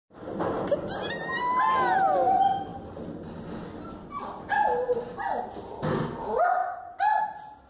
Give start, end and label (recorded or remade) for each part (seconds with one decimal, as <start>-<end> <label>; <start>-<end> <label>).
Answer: 0.0-7.7 recorded